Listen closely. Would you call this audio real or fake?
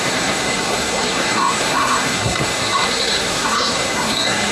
fake